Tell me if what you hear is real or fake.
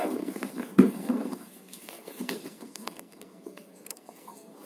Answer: fake